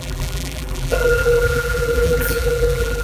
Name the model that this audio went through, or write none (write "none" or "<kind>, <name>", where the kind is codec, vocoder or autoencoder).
vocoder, BigVGAN v2